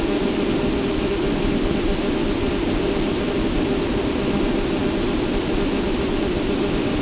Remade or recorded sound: recorded